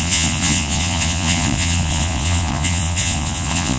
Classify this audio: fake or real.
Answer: fake